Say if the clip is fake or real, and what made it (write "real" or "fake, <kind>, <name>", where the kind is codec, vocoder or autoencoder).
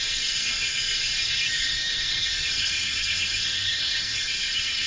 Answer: fake, codec, SNAC